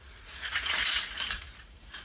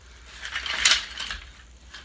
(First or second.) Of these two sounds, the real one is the second